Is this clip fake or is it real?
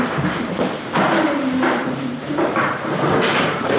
fake